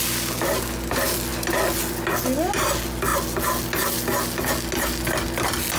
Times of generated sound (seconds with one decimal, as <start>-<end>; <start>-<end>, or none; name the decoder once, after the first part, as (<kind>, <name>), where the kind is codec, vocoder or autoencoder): none